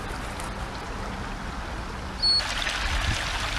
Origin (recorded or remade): recorded